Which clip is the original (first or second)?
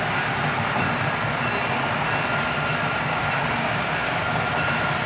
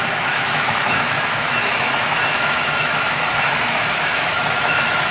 first